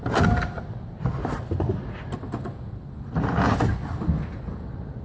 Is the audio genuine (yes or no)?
yes